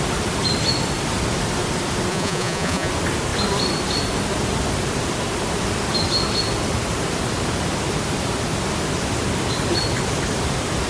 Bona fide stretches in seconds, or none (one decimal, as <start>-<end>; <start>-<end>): 0.0-2.1; 2.9-10.9